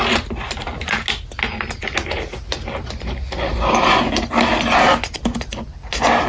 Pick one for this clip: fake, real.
real